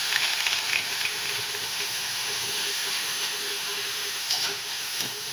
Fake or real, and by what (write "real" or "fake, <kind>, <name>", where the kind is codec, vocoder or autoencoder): fake, autoencoder, DAC-VAE